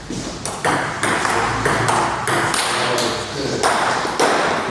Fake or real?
real